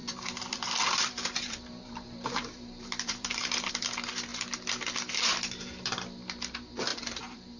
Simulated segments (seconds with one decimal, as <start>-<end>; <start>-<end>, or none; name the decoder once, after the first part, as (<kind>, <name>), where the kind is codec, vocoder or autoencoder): 0.0-3.7 (vocoder, BigVGAN v2); 6.9-7.6